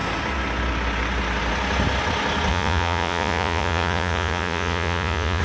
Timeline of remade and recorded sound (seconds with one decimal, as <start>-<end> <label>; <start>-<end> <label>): 0.0-2.5 recorded; 2.5-5.4 remade